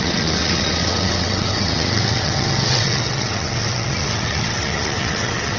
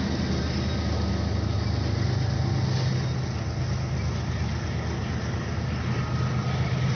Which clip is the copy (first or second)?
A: first